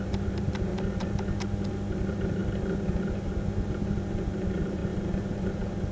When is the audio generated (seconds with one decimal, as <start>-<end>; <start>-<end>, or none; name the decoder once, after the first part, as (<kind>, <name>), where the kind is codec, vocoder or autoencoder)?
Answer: 0.0-0.7 (vocoder, BigVGAN v2); 2.0-2.4; 3.0-4.8; 5.4-5.9